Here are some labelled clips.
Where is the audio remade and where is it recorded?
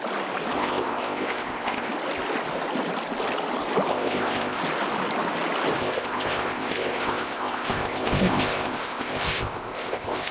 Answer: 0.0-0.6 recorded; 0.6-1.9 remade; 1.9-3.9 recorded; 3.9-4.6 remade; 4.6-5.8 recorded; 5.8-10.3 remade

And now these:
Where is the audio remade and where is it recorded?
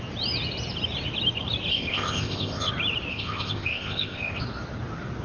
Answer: 0.0-1.7 recorded; 1.7-2.7 remade; 2.7-3.1 recorded; 3.1-4.4 remade; 4.4-5.2 recorded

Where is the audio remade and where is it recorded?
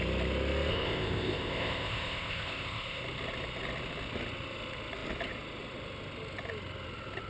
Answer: 0.0-0.7 recorded; 0.7-3.0 remade; 3.0-7.3 recorded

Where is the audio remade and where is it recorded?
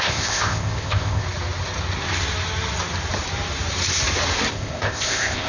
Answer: 0.0-1.2 remade; 1.2-4.5 recorded; 4.5-5.5 remade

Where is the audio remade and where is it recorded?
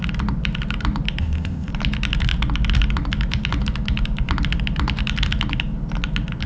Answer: 0.0-1.2 recorded; 1.2-1.7 remade; 1.7-6.5 recorded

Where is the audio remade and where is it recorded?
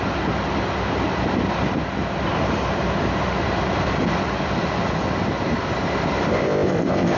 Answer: 0.0-6.3 recorded; 6.3-7.2 remade